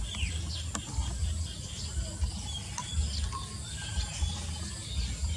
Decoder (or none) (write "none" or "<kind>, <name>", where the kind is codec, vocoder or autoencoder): none